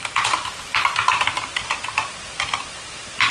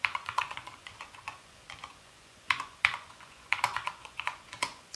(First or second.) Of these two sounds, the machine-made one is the second